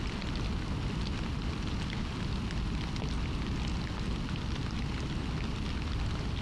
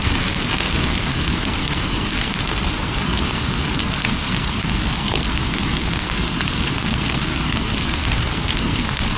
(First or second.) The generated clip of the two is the second